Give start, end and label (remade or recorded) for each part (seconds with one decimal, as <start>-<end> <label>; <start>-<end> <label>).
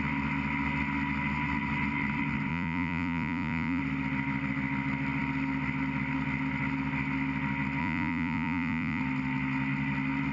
0.0-2.5 recorded; 2.5-3.8 remade; 3.8-7.8 recorded; 7.8-9.0 remade; 9.0-10.3 recorded